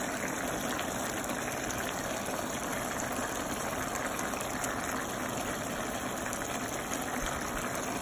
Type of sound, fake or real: real